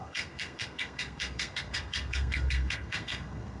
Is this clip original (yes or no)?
no